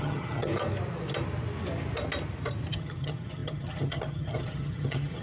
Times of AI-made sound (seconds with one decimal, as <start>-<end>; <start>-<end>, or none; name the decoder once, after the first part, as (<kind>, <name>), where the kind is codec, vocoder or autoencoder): 0.0-0.5 (vocoder, HiFi-GAN); 2.7-5.2